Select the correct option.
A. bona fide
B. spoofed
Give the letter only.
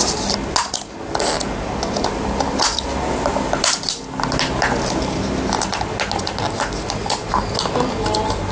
A